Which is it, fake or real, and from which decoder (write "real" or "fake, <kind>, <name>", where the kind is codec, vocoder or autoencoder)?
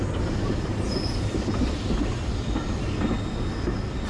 real